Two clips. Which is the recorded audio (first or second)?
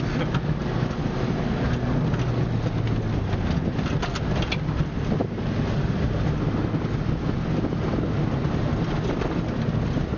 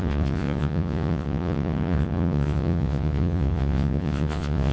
first